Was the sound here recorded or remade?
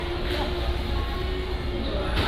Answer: recorded